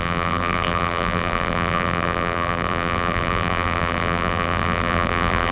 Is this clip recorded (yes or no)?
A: no